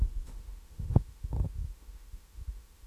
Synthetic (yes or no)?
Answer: yes